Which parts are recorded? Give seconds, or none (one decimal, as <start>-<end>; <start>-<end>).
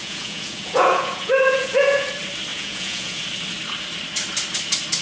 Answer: 2.1-2.5; 3.2-5.0